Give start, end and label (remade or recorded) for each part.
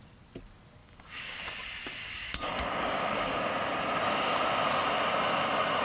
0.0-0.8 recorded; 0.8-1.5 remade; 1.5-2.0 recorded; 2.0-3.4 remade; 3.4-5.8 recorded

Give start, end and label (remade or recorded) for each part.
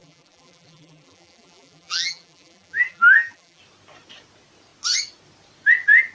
0.0-3.6 remade; 3.6-6.1 recorded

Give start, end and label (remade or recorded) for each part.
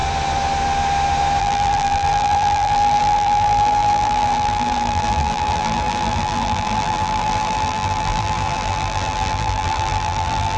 0.0-1.4 recorded; 1.4-10.6 remade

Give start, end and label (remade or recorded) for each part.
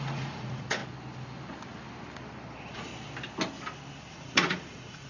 0.0-0.8 remade; 0.8-2.5 recorded; 2.5-2.9 remade; 2.9-4.1 recorded; 4.1-5.1 remade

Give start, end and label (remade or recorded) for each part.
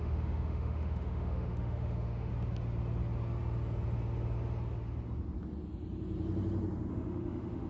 0.0-2.3 remade; 2.3-6.9 recorded; 6.9-7.7 remade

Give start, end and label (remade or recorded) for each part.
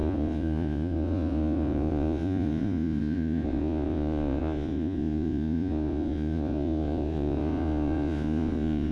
0.0-8.9 remade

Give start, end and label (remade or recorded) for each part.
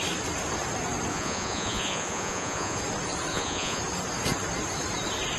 0.0-1.1 recorded; 1.1-2.8 remade; 2.8-3.3 recorded; 3.3-3.8 remade; 3.8-5.4 recorded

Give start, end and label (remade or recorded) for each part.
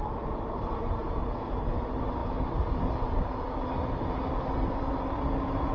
0.0-1.5 remade; 1.5-5.7 recorded